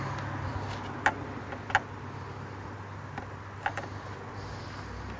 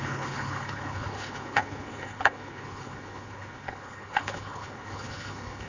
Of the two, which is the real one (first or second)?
first